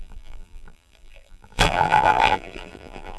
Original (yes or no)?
no